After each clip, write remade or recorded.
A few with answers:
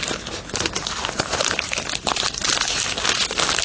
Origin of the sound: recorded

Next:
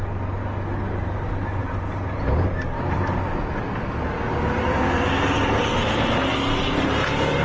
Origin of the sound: recorded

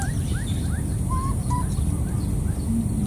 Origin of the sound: remade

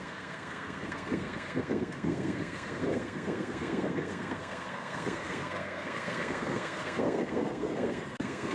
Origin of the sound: remade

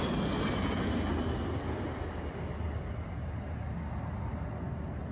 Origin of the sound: recorded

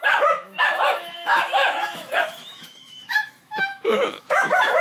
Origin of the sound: remade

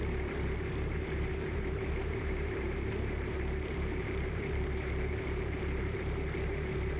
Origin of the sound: remade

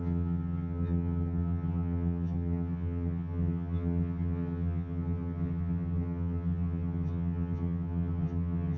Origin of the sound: remade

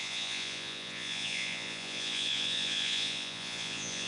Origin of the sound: remade